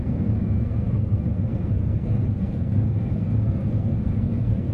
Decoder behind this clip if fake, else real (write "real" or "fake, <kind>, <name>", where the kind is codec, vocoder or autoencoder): fake, codec, SNAC